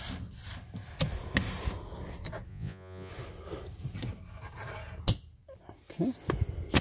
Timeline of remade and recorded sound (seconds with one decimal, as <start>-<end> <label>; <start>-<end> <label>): 0.0-2.5 recorded; 2.5-3.1 remade; 3.1-6.8 recorded